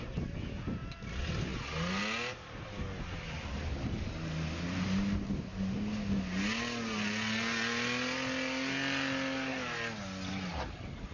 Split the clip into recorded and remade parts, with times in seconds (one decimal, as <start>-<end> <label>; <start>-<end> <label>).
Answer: 0.0-11.1 recorded